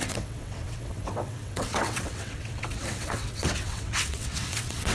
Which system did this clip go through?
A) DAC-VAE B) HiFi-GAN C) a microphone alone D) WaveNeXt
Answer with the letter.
D